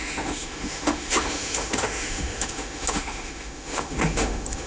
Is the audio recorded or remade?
remade